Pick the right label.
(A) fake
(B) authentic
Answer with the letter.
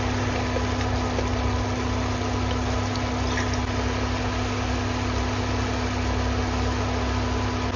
B